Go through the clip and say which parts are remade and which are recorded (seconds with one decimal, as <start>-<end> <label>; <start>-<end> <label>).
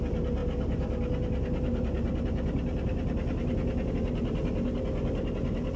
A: 0.0-5.8 recorded